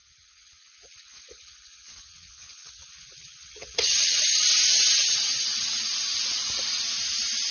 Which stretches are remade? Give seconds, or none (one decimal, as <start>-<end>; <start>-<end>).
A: 0.0-4.2; 5.0-5.6